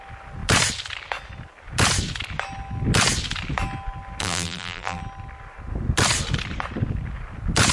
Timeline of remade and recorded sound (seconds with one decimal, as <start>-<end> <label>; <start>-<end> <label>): 0.0-4.2 recorded; 4.2-5.0 remade; 5.0-7.7 recorded